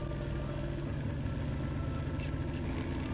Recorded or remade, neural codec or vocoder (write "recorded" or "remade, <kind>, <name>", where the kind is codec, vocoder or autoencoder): recorded